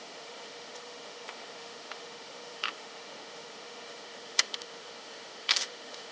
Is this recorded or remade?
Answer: remade